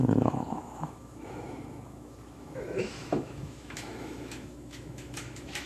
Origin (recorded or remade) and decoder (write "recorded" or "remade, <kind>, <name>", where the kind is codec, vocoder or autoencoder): remade, autoencoder, DAC-VAE